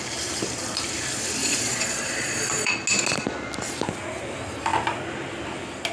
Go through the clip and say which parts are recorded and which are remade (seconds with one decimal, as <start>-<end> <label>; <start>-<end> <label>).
0.0-1.4 recorded; 1.4-2.7 remade; 2.7-5.9 recorded